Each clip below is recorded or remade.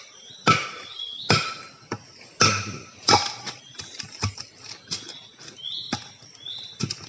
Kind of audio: recorded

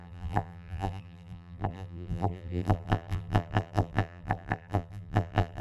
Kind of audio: remade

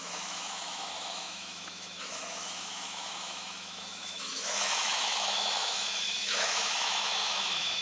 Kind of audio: remade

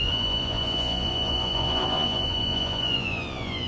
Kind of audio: remade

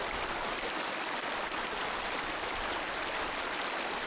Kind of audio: recorded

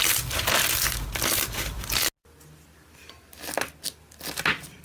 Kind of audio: recorded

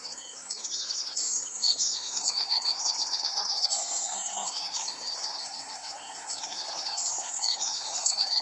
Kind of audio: remade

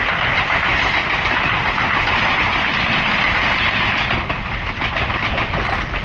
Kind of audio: recorded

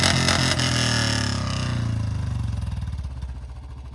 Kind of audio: recorded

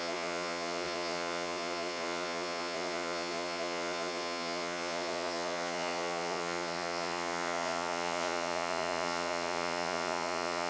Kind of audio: remade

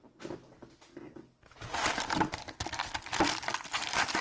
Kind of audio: recorded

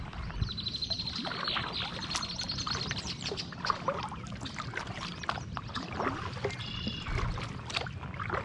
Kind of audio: recorded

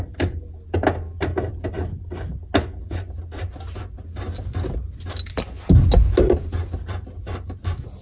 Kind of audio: recorded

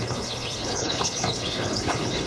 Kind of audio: remade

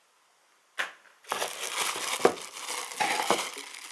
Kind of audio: recorded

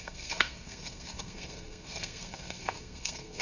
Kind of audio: remade